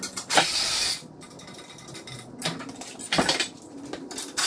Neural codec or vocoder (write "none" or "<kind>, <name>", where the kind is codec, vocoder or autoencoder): none